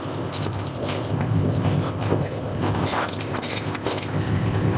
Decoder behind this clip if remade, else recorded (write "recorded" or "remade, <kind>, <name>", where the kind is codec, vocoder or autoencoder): remade, codec, ZipCodec